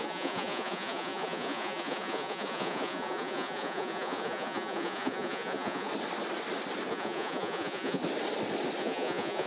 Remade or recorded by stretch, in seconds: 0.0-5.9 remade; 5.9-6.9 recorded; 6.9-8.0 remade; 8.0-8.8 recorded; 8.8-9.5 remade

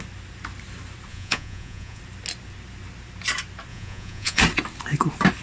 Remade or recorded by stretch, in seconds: 0.0-1.1 recorded; 1.1-2.0 remade; 2.0-3.7 recorded; 3.7-4.4 remade; 4.4-5.4 recorded

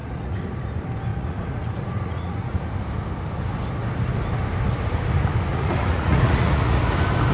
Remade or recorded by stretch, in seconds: 0.0-0.7 remade; 0.7-1.1 recorded; 1.1-2.6 remade; 2.6-5.5 recorded; 5.5-6.8 remade; 6.8-7.3 recorded